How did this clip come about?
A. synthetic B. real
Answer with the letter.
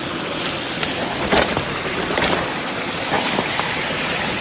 B